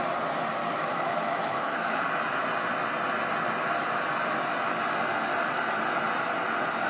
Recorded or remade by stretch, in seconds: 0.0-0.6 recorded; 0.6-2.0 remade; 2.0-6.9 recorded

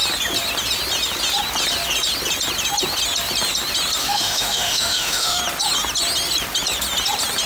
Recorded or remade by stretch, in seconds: 0.0-4.0 recorded; 4.0-5.4 remade; 5.4-7.5 recorded

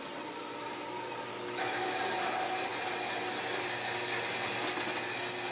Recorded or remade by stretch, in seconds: 0.0-1.3 recorded; 1.3-2.0 remade; 2.0-5.5 recorded

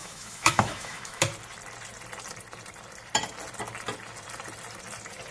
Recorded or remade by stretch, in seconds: 0.0-1.2 remade; 1.2-5.3 recorded

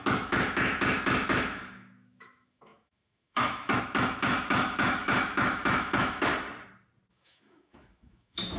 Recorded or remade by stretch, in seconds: 0.0-6.3 remade; 6.3-7.1 recorded; 7.1-8.6 remade

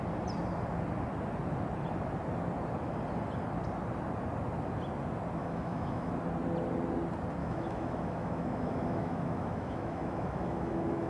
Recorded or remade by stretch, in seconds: 0.0-5.4 recorded; 5.4-6.1 remade; 6.1-7.4 recorded; 7.4-11.1 remade

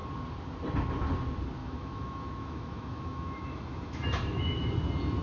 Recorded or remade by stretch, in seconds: 0.0-1.6 recorded; 1.6-4.7 remade; 4.7-5.2 recorded